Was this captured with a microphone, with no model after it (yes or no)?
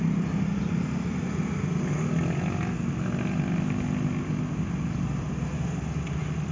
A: yes